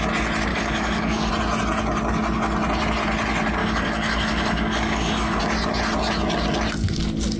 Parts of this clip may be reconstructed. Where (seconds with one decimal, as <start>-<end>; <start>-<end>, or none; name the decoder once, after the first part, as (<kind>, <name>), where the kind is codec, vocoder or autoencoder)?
0.5-1.3 (codec, DAC); 3.6-5.4